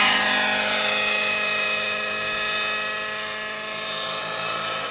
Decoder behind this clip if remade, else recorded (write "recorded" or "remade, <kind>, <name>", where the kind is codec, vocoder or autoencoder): recorded